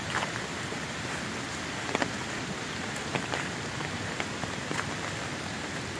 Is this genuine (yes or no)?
yes